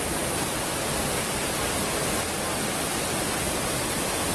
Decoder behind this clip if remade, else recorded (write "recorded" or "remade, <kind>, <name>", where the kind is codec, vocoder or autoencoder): recorded